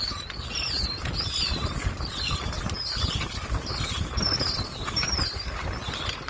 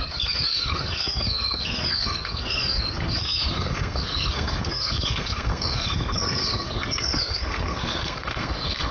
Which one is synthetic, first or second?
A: second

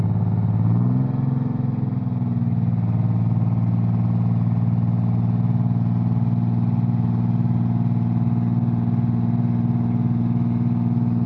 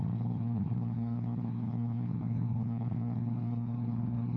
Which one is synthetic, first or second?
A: second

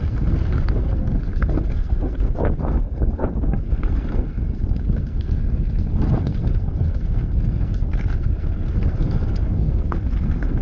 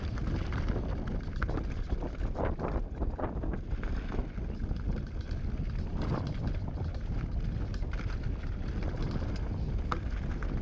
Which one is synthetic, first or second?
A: first